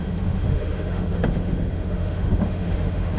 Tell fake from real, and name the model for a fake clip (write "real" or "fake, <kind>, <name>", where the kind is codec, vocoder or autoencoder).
fake, autoencoder, DAC-VAE